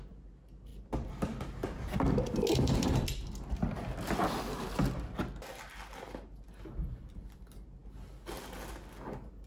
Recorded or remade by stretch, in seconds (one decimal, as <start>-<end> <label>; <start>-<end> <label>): 0.0-9.5 recorded